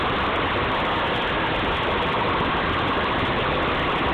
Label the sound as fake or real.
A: real